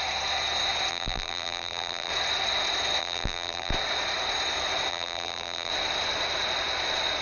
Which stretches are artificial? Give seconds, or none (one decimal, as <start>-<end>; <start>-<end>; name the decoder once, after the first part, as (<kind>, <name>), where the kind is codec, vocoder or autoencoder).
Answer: 0.9-2.1 (vocoder, BigVGAN v2); 3.0-3.7; 4.9-5.7